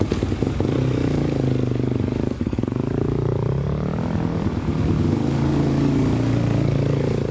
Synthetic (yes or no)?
yes